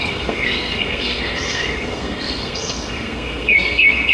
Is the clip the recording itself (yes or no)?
no